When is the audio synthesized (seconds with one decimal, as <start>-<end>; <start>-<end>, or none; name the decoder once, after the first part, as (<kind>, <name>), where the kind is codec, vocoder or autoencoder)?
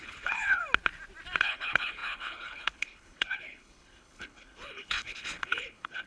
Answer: 0.0-0.6 (codec, HILCodec); 1.4-6.1